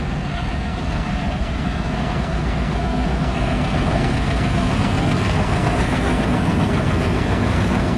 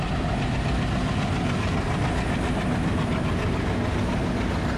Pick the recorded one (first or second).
second